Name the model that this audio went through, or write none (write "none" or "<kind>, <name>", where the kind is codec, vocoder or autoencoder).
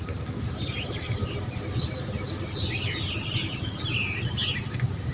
none